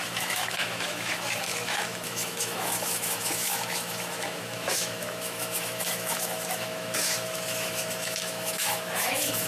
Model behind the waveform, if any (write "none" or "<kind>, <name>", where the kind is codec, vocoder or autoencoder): autoencoder, DAC-VAE